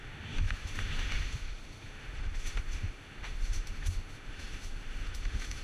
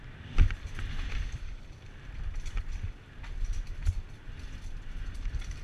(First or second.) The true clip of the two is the second